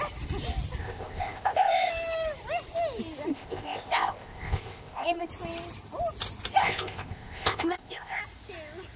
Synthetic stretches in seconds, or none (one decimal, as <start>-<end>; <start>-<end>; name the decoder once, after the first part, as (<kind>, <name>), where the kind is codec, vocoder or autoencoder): 0.8-1.9 (codec, ZipCodec); 3.3-5.3; 6.6-8.2